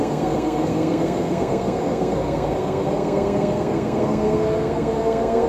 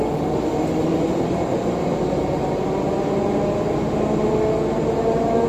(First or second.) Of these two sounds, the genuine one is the second